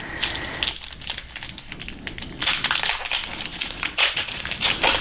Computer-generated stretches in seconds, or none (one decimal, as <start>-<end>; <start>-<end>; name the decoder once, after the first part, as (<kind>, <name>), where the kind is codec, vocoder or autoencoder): 3.5-4.4 (vocoder, Vocos)